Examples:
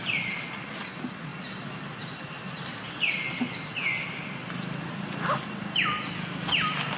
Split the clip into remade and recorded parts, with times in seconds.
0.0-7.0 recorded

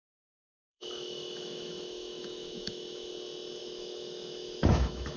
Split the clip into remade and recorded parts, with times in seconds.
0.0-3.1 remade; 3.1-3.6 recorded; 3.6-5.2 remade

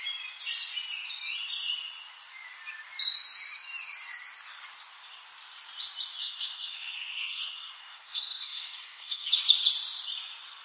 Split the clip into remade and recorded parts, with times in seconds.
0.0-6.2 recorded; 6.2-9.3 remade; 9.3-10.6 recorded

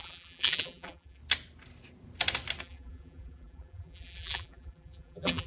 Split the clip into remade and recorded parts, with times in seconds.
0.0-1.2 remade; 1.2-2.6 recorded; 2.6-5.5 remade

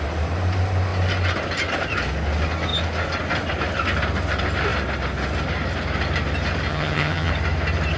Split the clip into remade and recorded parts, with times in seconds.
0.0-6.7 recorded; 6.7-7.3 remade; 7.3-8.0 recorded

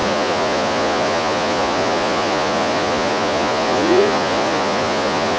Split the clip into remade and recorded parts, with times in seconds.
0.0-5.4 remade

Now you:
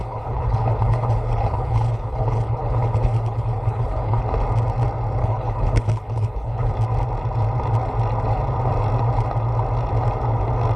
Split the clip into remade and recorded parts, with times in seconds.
0.0-4.2 remade; 4.2-5.2 recorded; 5.2-6.7 remade; 6.7-10.8 recorded